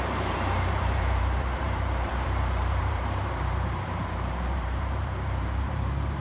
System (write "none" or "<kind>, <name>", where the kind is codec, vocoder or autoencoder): vocoder, BigVGAN v2